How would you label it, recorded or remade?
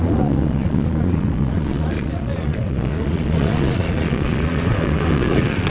remade